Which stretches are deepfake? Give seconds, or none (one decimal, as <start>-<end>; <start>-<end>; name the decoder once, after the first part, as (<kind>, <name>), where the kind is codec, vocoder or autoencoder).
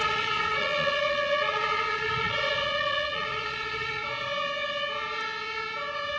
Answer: 0.0-4.0 (vocoder, Vocos)